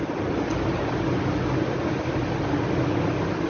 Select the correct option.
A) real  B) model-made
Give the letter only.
A